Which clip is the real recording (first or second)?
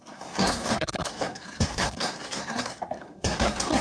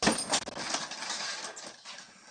second